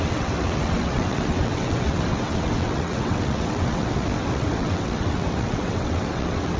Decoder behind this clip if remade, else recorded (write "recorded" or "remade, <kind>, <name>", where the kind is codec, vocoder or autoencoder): remade, vocoder, WaveNeXt